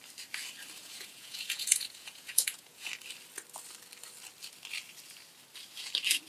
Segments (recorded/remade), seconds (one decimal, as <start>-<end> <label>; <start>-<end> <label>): 0.0-0.8 recorded; 0.8-2.9 remade; 2.9-6.3 recorded